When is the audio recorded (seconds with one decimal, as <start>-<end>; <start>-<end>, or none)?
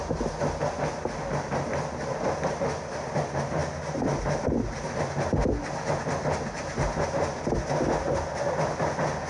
0.0-9.3